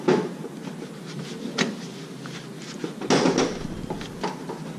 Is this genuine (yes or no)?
yes